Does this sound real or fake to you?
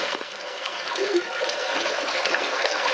fake